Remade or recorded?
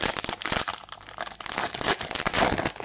recorded